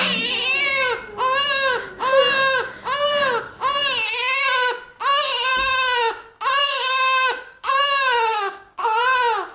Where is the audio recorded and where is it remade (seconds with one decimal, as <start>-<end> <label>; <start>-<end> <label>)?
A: 0.0-6.6 recorded; 6.6-7.7 remade; 7.7-8.3 recorded; 8.3-9.0 remade; 9.0-9.5 recorded